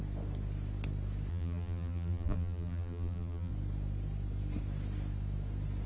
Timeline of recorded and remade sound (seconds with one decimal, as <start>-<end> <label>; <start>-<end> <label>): 0.0-1.3 recorded; 1.3-3.5 remade; 3.5-5.9 recorded